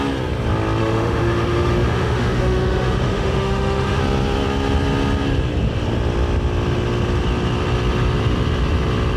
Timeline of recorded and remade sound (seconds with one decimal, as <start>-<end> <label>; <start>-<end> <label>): 0.0-0.8 recorded; 0.8-4.0 remade; 4.0-9.2 recorded